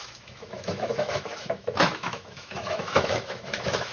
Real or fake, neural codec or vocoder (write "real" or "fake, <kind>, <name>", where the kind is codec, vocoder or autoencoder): fake, autoencoder, DAC-VAE